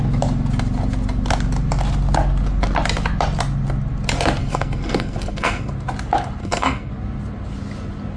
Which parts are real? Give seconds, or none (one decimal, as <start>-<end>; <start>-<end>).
0.0-4.4; 5.7-6.4; 6.9-8.2